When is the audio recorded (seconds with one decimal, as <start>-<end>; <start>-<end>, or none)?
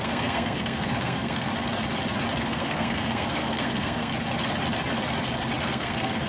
1.5-2.4; 4.1-5.6